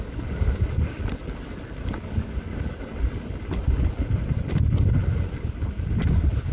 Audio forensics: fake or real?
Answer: fake